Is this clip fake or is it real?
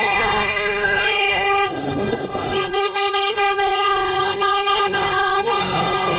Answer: fake